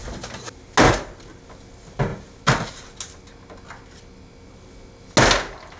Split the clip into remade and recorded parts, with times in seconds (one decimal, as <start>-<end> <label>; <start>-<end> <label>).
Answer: 0.0-5.8 recorded